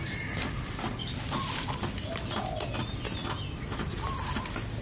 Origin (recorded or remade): recorded